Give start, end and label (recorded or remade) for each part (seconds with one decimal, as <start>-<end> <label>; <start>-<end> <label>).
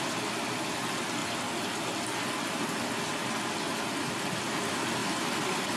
0.0-5.8 recorded